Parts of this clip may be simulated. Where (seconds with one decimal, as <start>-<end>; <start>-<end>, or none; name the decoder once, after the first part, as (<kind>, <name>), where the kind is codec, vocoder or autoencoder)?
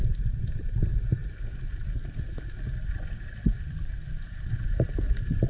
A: 0.0-0.7 (vocoder, BigVGAN v2)